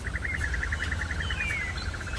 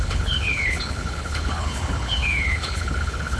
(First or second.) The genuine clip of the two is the first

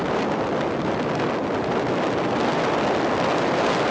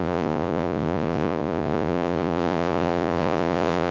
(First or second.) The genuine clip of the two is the first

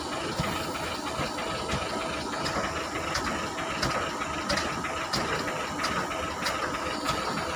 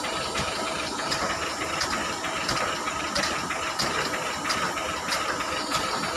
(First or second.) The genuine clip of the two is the first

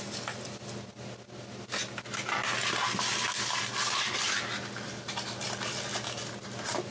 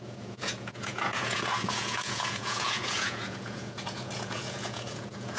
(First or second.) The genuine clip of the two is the first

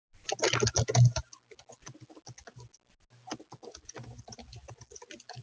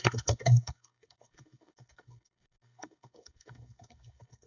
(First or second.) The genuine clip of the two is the first